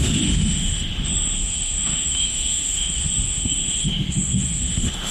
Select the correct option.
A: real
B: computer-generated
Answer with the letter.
B